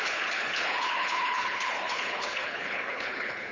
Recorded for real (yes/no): no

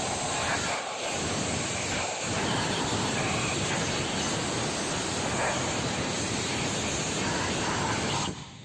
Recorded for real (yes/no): yes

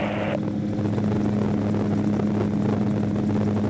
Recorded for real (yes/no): yes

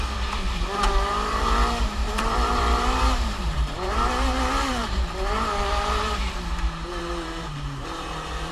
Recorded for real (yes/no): no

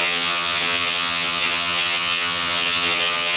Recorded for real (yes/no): no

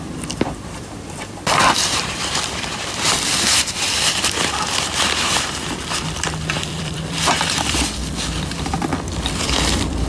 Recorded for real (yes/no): no